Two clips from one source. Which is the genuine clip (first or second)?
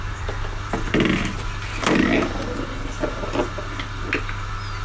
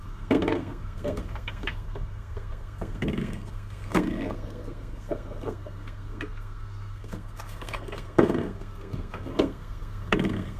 first